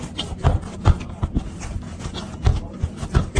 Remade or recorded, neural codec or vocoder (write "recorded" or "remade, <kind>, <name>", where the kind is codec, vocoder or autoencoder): recorded